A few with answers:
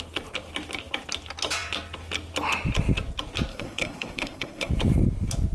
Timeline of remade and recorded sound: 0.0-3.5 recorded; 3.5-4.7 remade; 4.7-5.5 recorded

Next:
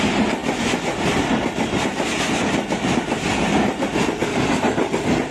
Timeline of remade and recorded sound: 0.0-5.3 recorded

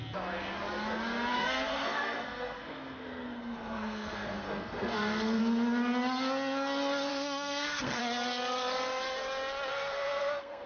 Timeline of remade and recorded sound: 0.0-1.3 recorded; 1.3-5.4 remade; 5.4-7.1 recorded; 7.1-8.0 remade; 8.0-9.7 recorded; 9.7-10.7 remade

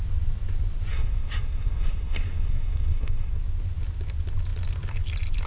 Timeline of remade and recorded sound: 0.0-0.9 recorded; 0.9-3.3 remade; 3.3-5.5 recorded

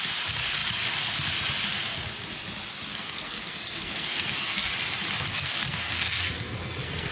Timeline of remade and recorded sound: 0.0-2.9 recorded; 2.9-4.7 remade; 4.7-5.3 recorded; 5.3-7.1 remade